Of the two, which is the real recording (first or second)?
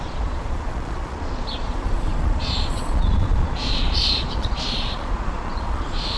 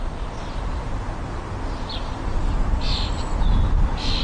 second